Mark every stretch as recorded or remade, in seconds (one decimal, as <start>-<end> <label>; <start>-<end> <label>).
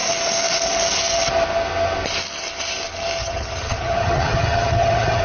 0.0-3.2 recorded; 3.2-5.2 remade